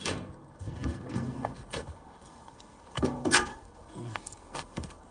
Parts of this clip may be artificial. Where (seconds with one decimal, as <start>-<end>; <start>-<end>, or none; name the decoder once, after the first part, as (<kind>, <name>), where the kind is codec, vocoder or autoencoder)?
0.0-5.1 (codec, SNAC)